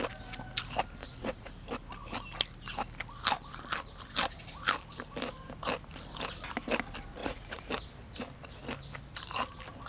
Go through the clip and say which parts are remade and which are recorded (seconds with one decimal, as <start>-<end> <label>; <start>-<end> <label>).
0.0-1.0 recorded; 1.0-1.5 remade; 1.5-7.2 recorded; 7.2-7.7 remade; 7.7-9.9 recorded